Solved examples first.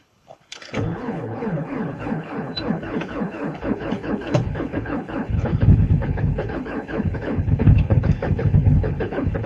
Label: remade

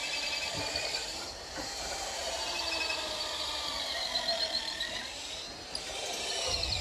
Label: remade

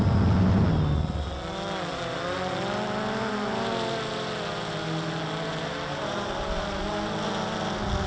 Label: recorded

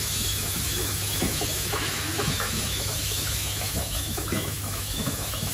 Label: remade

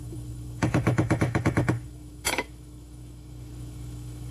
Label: remade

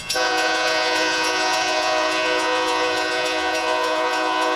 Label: remade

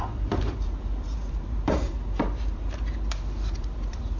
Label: remade